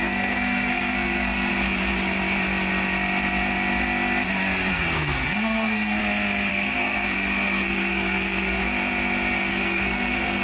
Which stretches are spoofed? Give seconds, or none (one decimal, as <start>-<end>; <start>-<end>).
0.0-1.5; 4.7-6.0; 6.5-8.6; 9.5-10.4